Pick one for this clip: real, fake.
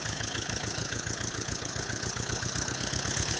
fake